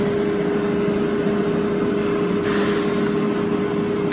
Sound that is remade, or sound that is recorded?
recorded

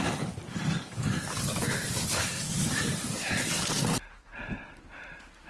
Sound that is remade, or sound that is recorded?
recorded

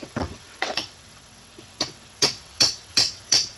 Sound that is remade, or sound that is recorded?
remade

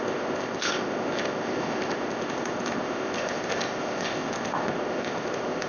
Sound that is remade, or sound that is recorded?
remade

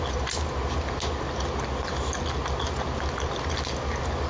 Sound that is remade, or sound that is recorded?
recorded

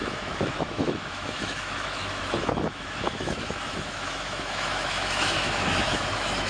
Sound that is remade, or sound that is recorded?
remade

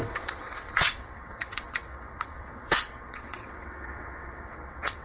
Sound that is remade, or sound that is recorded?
remade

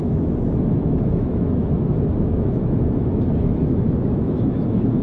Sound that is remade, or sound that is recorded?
remade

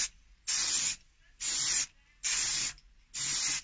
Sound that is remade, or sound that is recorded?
recorded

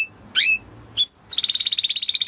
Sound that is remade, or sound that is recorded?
recorded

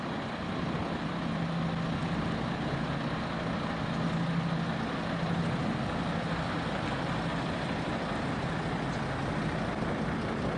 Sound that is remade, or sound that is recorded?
recorded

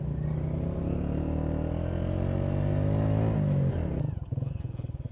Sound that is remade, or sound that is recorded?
recorded